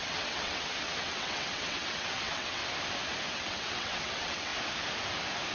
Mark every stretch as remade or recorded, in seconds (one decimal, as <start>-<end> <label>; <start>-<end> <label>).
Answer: 0.0-2.6 remade; 2.6-3.3 recorded; 3.3-4.5 remade; 4.5-5.5 recorded